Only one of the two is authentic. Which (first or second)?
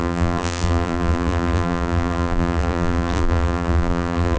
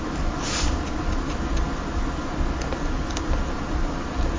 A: second